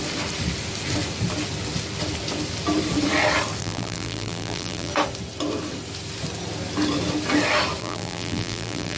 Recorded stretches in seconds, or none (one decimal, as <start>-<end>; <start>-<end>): 0.0-3.6; 4.9-7.8